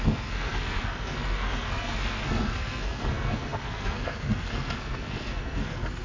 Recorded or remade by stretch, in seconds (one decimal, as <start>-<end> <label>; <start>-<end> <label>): 0.0-6.0 remade